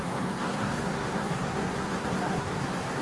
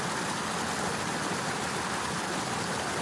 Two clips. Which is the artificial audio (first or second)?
first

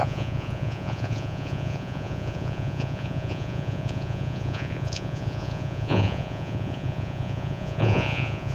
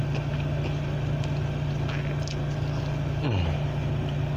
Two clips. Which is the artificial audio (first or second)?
first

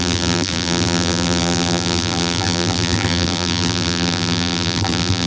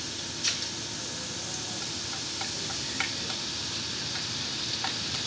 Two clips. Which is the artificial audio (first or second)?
first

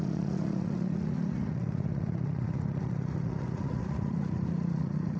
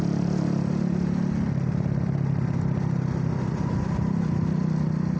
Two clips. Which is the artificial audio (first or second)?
first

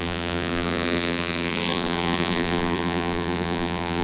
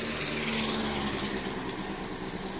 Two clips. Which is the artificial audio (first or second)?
first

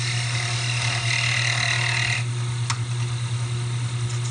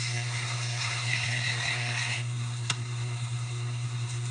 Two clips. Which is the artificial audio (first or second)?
second